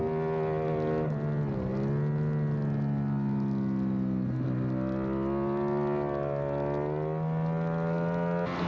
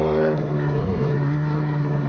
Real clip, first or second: first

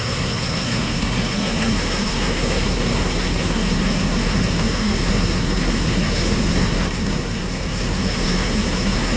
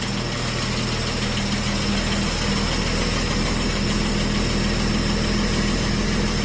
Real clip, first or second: second